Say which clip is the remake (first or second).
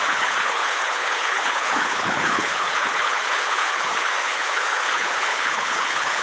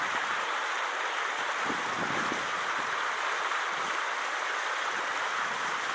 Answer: first